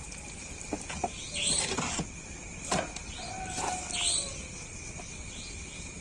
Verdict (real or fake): real